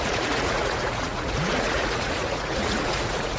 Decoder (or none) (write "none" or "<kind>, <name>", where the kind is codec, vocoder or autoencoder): vocoder, Vocos